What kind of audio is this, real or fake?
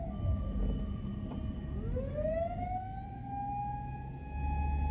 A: real